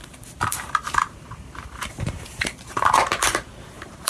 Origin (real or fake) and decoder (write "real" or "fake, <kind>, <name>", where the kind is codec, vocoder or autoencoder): fake, vocoder, BigVGAN v2